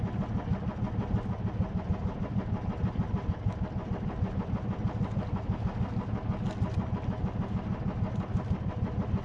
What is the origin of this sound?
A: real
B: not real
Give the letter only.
A